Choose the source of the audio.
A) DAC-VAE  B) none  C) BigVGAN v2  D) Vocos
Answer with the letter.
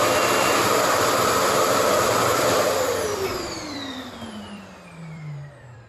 C